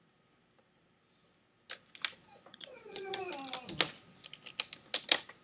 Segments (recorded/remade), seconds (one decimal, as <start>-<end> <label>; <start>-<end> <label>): 0.0-2.5 recorded; 2.5-3.2 remade; 3.2-5.4 recorded

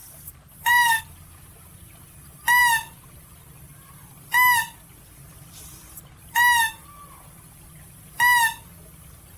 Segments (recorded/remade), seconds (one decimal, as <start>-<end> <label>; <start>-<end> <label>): 0.0-1.0 remade; 1.0-9.4 recorded

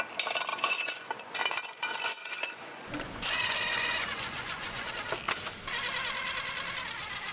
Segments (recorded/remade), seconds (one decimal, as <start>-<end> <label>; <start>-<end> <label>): 0.0-0.5 recorded; 0.5-4.9 remade; 4.9-7.3 recorded